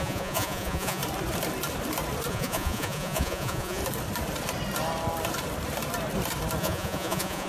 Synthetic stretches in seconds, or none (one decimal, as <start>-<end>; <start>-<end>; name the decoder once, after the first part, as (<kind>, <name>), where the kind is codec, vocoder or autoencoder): 0.0-1.0 (vocoder, Vocos); 2.3-3.8; 6.6-7.5